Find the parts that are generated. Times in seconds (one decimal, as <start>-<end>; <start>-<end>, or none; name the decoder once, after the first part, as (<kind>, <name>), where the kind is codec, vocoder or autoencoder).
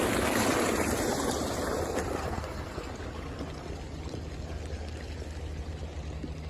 2.2-2.9 (codec, SNAC)